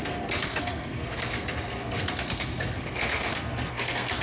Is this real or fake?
fake